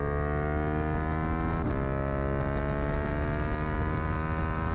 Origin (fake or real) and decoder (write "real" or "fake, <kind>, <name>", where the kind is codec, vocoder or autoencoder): real